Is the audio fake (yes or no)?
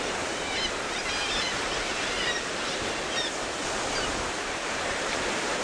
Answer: yes